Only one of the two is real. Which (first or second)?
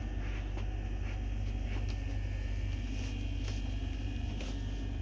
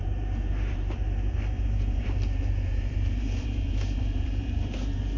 first